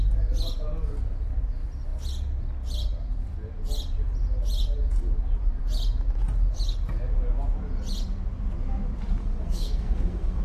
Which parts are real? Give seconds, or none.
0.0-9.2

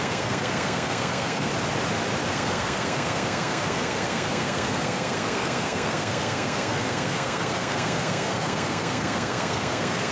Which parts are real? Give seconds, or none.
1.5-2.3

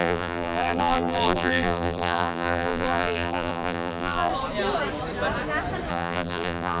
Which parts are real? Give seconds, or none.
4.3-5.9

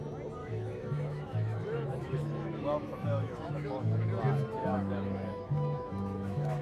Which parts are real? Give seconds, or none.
0.0-0.4; 4.1-4.6

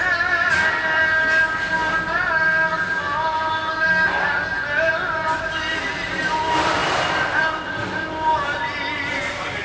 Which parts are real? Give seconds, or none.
0.0-9.6